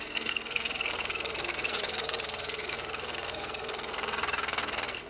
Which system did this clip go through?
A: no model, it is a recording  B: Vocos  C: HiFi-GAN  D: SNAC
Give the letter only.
D